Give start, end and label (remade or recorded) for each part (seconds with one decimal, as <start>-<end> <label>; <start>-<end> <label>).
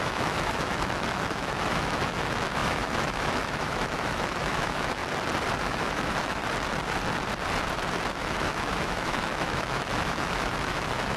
0.0-5.0 remade; 5.0-5.6 recorded; 5.6-6.4 remade; 6.4-8.1 recorded; 8.1-11.2 remade